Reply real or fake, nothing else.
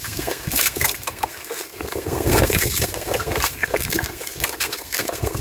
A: fake